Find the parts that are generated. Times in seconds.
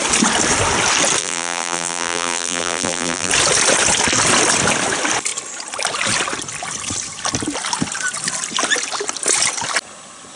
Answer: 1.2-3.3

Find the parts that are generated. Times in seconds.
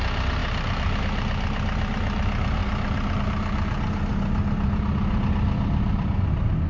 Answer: 2.6-3.2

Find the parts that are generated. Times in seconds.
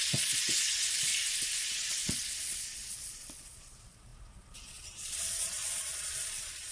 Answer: 0.0-1.1; 1.7-6.7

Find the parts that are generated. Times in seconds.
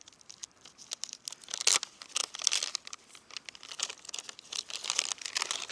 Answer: none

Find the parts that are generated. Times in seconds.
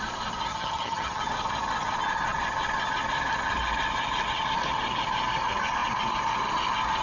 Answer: 0.5-1.2